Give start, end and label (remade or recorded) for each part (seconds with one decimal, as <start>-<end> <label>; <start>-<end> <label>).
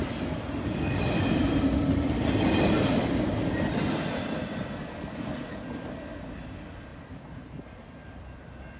0.0-6.9 recorded; 6.9-8.2 remade; 8.2-8.8 recorded